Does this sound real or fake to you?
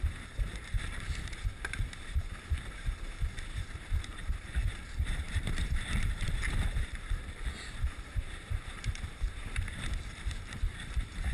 fake